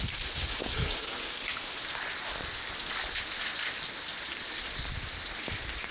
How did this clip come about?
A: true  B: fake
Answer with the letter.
A